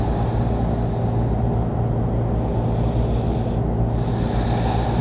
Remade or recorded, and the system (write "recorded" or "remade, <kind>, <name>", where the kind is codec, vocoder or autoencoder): recorded